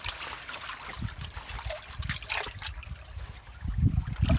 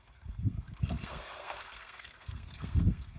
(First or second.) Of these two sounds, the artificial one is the second